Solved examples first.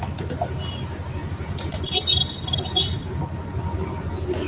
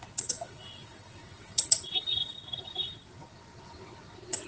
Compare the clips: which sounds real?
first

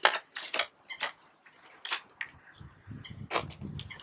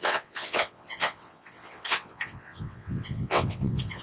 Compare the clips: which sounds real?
first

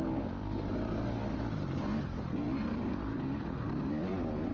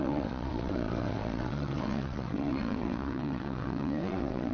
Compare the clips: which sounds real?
first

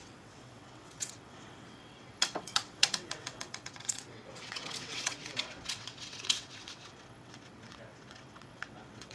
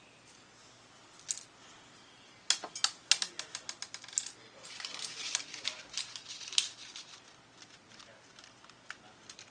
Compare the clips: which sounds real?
second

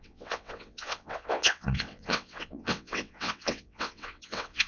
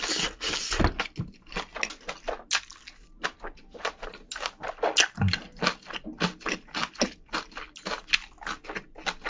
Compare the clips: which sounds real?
second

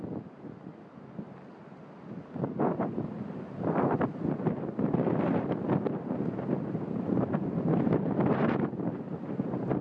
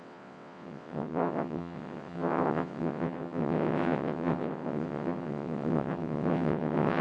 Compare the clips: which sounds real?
first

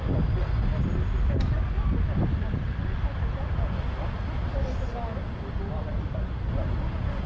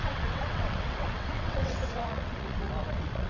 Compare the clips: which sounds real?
first